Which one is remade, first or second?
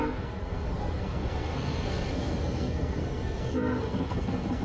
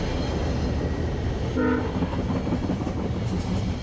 first